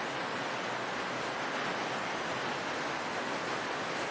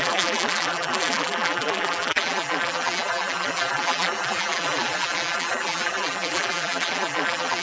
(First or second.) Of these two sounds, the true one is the first